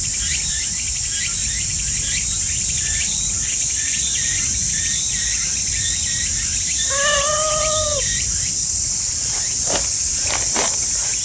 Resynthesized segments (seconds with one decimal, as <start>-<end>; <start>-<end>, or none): none